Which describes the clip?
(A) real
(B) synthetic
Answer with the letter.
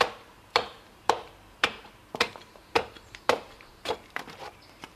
B